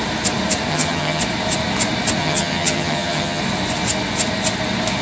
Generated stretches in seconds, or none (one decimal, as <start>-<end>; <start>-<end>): 0.7-1.2; 2.2-3.4